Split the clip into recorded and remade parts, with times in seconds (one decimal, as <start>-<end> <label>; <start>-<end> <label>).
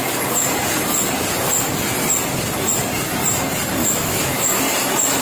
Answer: 0.0-3.8 recorded; 3.8-4.6 remade; 4.6-5.2 recorded